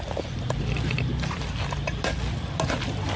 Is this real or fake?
real